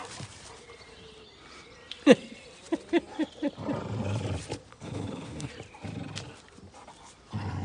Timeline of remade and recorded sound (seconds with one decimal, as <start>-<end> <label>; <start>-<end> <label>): 0.0-4.7 recorded; 4.7-5.5 remade; 5.5-7.6 recorded